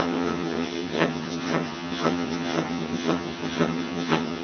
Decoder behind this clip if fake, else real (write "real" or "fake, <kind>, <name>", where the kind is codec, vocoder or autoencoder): fake, vocoder, HiFi-GAN